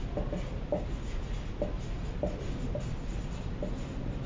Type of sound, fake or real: real